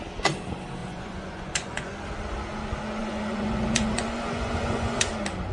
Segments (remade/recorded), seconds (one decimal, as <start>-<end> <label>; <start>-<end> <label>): 0.0-0.8 recorded; 0.8-1.9 remade; 1.9-3.0 recorded; 3.0-5.1 remade; 5.1-5.5 recorded